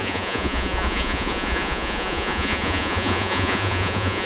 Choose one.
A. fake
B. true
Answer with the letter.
A